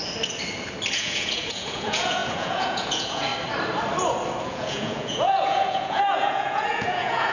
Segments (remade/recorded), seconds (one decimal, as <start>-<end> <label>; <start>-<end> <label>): 0.0-0.9 recorded; 0.9-3.3 remade; 3.3-4.4 recorded; 4.4-7.3 remade